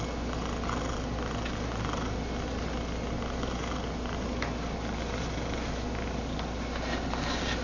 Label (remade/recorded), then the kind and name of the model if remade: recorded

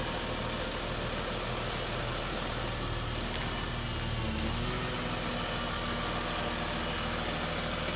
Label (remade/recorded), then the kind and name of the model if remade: recorded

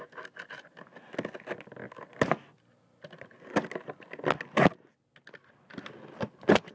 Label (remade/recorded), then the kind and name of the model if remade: recorded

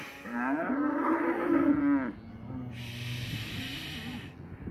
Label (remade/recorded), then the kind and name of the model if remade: recorded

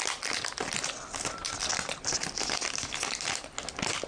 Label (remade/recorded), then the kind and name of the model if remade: recorded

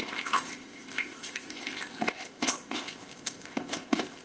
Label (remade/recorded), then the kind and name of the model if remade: remade, codec, ZipCodec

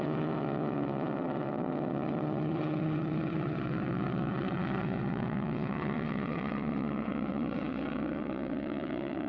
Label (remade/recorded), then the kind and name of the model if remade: remade, vocoder, WaveNeXt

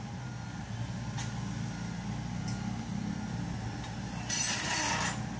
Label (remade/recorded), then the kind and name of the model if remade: recorded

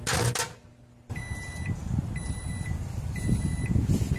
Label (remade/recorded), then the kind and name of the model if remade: recorded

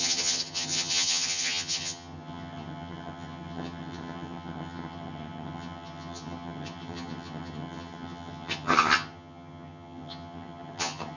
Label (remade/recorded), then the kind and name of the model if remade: remade, vocoder, HiFi-GAN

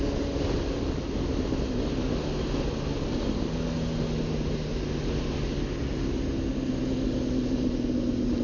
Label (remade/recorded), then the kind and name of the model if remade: recorded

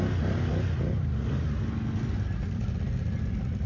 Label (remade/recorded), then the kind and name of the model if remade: recorded